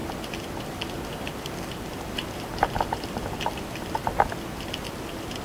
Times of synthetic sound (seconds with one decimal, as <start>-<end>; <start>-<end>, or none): 0.0-3.1